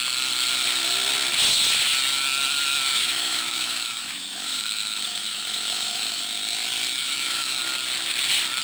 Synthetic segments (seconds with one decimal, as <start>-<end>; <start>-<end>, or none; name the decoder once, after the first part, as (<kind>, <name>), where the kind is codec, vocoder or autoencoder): 2.9-6.2 (autoencoder, DAC-VAE); 7.0-7.6